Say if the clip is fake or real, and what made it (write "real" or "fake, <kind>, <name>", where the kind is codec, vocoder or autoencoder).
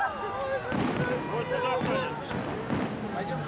real